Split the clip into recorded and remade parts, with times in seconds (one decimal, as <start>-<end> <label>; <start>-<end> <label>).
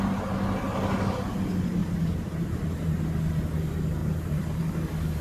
0.0-1.8 recorded; 1.8-3.0 remade; 3.0-4.0 recorded; 4.0-4.6 remade; 4.6-5.2 recorded